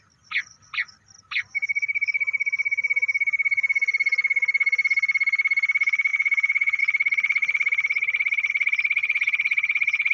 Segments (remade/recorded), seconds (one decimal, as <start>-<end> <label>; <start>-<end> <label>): 0.0-6.1 recorded; 6.1-6.8 remade; 6.8-9.0 recorded; 9.0-10.1 remade